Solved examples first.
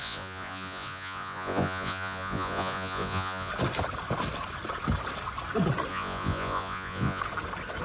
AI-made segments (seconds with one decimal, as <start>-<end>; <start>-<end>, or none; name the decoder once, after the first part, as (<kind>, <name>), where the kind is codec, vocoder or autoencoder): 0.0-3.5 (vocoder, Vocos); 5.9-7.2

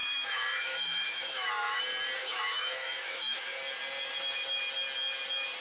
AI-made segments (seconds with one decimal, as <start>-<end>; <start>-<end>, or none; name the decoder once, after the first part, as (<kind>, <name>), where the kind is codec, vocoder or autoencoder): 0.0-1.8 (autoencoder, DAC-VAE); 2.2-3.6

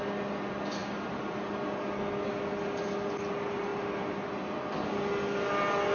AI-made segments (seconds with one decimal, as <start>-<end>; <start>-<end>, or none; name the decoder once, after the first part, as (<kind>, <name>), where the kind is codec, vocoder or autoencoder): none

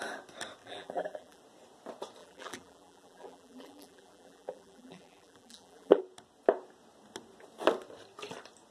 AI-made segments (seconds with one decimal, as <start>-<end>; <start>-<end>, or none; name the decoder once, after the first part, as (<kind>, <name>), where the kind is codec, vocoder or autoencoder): 0.6-1.4 (vocoder, BigVGAN v2); 2.2-6.0

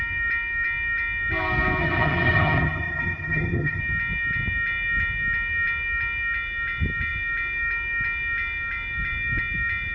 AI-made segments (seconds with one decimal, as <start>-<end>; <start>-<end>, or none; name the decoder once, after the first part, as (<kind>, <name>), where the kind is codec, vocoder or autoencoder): 1.8-3.8 (vocoder, HiFi-GAN)

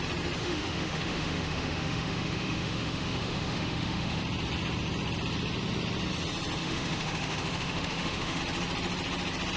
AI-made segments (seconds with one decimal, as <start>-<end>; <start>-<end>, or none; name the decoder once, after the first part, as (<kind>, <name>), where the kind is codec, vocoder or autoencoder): 0.4-4.2 (autoencoder, DAC-VAE); 6.6-8.4

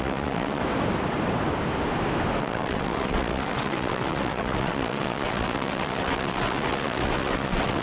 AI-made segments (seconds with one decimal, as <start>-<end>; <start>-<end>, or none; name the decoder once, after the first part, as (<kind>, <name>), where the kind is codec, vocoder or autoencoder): 0.0-0.6 (vocoder, WaveNeXt); 2.4-7.8

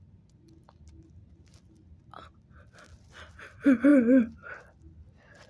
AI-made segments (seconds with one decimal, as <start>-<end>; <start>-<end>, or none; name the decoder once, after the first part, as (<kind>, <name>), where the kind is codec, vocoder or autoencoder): none